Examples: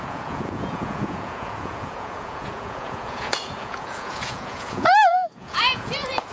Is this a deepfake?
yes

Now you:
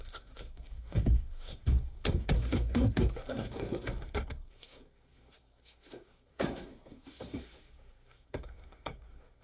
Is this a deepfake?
yes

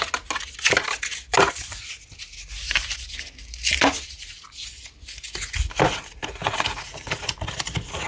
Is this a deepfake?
no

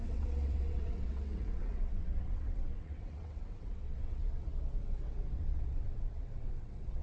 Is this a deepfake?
yes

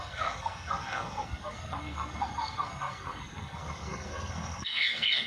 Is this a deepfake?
yes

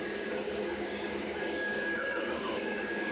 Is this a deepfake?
yes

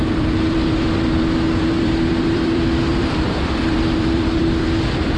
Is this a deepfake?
yes